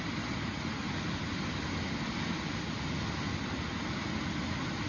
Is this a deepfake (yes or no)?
no